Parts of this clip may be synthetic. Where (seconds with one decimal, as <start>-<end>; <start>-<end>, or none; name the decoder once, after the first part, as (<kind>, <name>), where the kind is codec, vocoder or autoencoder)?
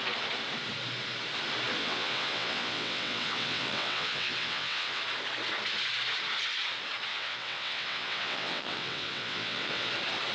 1.8-5.0 (vocoder, WaveNeXt); 7.1-9.9